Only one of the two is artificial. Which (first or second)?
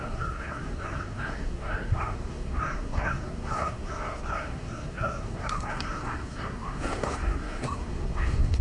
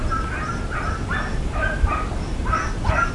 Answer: first